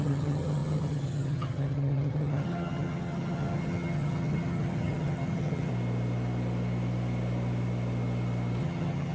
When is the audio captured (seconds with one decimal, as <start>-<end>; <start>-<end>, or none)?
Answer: 5.7-8.6